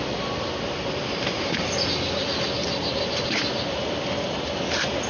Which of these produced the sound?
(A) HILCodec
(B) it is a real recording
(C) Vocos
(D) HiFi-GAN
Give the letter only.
B